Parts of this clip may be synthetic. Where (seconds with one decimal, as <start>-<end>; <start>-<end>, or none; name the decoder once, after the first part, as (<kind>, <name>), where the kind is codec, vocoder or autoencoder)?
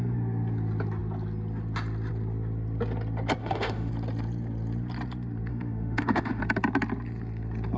3.4-3.9 (autoencoder, DAC-VAE); 5.5-6.4